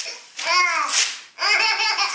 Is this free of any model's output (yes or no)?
yes